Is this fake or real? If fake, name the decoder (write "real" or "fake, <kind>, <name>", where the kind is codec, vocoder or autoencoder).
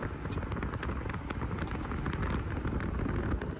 real